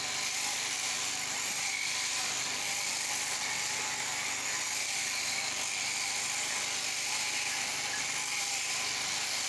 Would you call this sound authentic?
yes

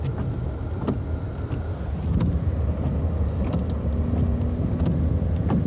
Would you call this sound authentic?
yes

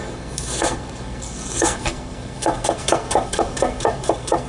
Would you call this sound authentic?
no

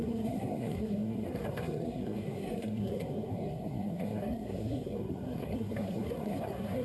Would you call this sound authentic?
no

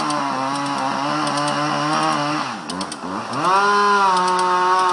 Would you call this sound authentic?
yes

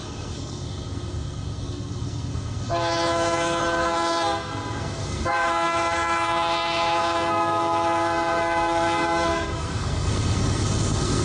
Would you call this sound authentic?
no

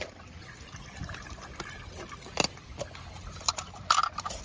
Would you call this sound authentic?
yes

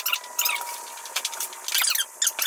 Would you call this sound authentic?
yes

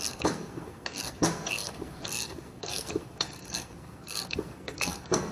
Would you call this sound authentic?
no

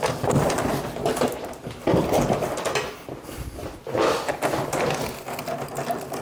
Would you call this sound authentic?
yes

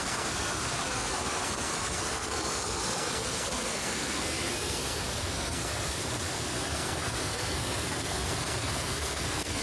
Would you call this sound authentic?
no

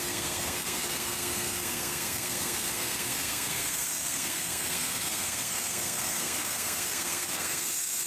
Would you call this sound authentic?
no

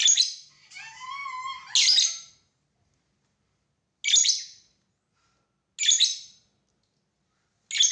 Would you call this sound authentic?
yes